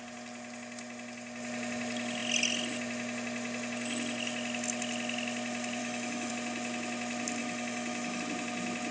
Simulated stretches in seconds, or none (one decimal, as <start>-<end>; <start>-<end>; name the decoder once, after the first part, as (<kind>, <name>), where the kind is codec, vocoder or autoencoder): 5.8-6.3 (autoencoder, DAC-VAE); 7.4-8.2